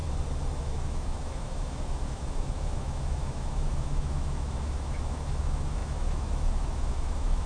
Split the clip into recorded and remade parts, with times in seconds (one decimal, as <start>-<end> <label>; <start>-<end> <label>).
0.0-0.6 recorded; 0.6-7.5 remade